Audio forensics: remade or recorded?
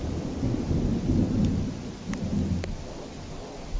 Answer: recorded